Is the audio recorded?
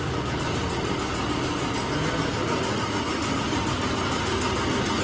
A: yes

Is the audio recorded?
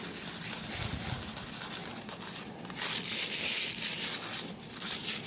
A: yes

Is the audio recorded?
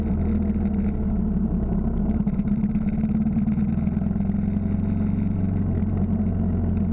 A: yes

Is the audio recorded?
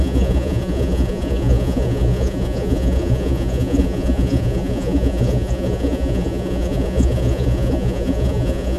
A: no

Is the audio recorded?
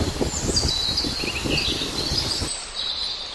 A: yes